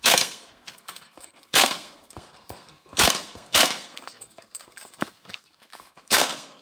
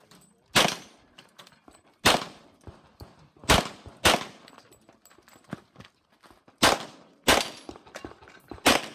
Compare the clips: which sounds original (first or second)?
second